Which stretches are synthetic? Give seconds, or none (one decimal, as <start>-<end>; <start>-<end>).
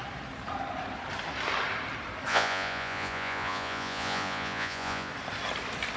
2.3-5.1